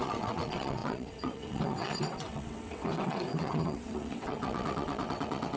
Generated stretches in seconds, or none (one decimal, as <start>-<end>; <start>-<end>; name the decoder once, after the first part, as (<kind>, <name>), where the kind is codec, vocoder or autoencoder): 0.0-5.6 (vocoder, WaveNeXt)